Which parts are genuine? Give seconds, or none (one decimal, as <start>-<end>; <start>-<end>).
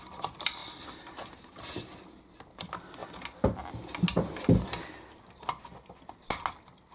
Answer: 0.6-2.2; 3.0-6.5